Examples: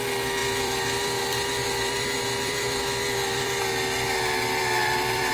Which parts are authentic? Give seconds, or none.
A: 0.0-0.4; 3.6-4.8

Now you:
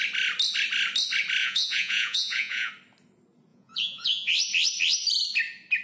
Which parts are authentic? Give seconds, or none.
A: 0.0-1.4; 2.7-3.5; 4.3-5.8

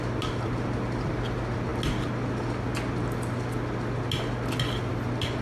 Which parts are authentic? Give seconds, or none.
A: 0.0-5.4

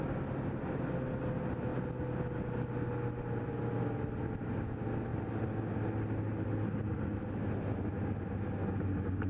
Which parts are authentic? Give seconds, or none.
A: 0.0-9.3

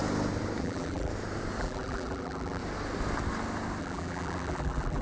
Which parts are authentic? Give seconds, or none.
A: 0.0-0.6; 1.1-1.6; 2.6-3.8

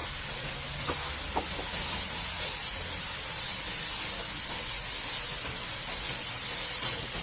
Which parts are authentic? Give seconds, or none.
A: 0.0-2.1; 2.6-6.7